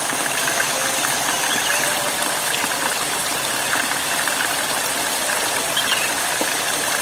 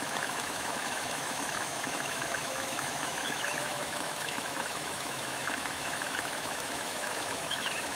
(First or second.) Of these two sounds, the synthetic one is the second